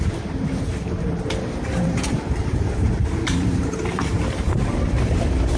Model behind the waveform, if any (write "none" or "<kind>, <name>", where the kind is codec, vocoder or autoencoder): vocoder, BigVGAN v2